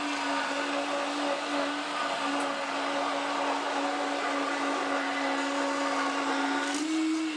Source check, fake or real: real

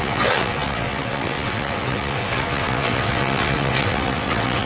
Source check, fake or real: fake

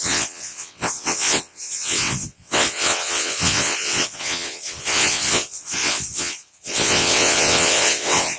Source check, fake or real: fake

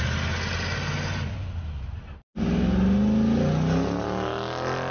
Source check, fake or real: real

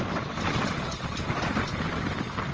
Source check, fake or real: real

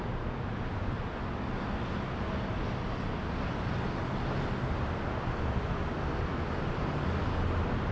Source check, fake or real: real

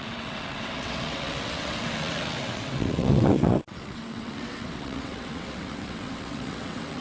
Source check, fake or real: fake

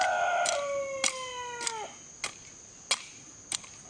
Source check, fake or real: real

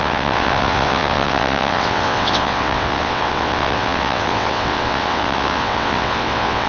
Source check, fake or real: fake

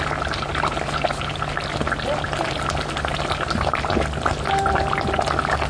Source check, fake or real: real